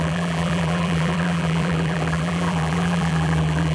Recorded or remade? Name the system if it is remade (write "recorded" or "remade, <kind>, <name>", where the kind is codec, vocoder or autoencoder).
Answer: remade, vocoder, BigVGAN v2